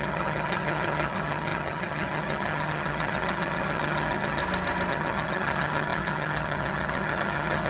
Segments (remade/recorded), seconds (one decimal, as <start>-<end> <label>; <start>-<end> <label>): 0.0-4.4 remade; 4.4-4.9 recorded; 4.9-7.7 remade